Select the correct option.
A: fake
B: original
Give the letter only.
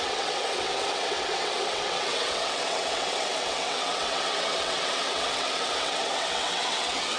A